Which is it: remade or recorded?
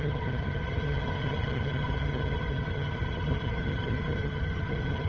remade